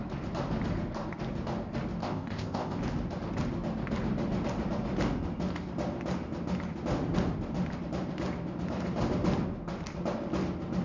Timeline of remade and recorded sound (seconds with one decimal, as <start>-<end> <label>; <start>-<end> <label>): 0.0-2.0 recorded; 2.0-2.8 remade; 2.8-10.8 recorded